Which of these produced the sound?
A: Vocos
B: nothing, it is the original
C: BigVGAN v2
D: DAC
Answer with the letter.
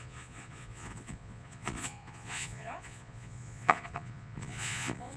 A